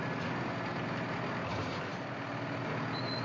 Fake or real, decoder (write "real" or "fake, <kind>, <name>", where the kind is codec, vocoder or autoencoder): real